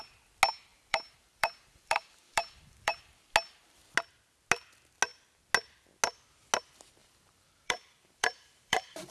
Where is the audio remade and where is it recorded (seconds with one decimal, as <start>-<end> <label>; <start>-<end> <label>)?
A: 0.0-0.7 recorded; 0.7-3.0 remade; 3.0-7.0 recorded; 7.0-9.1 remade